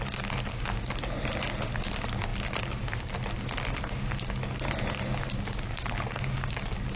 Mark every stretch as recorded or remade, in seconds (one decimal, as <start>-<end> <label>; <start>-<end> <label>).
0.0-7.0 recorded